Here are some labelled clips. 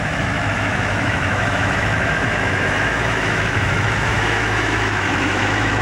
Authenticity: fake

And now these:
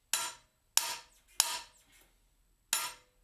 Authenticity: real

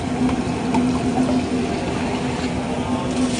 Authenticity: real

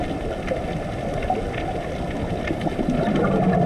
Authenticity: real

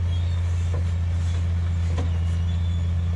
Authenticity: real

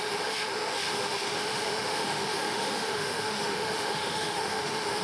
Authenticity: fake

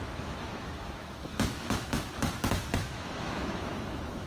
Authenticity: fake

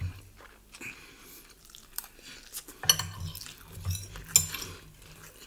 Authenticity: real